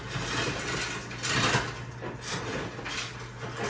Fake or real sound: real